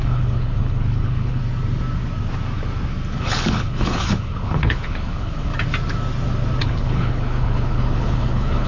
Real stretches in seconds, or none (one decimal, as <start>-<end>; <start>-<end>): 1.4-3.2; 5.5-6.6